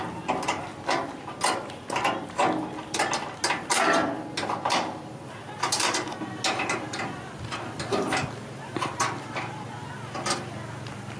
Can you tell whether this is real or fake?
real